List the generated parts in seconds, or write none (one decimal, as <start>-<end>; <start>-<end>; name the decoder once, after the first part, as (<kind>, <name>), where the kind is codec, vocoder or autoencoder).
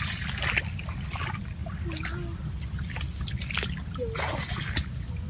none